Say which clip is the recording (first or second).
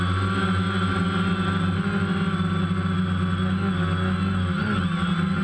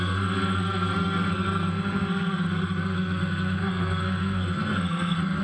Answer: first